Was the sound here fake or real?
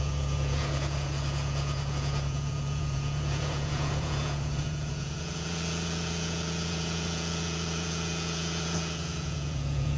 fake